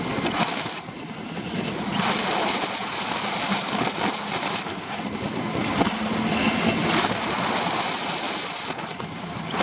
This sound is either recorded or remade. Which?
recorded